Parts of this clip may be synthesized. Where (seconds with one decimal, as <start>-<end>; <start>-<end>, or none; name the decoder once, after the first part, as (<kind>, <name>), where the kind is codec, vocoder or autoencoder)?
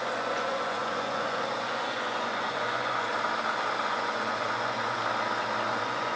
0.0-3.1 (vocoder, Vocos); 3.8-5.0; 5.7-6.2